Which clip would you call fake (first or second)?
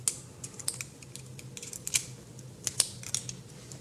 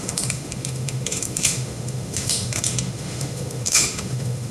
second